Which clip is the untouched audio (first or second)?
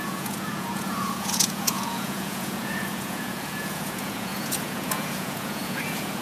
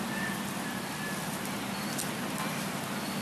second